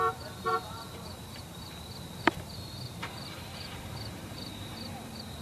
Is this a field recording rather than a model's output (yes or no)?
no